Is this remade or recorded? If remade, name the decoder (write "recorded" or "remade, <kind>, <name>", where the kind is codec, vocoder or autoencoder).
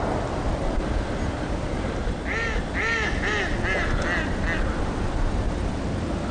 recorded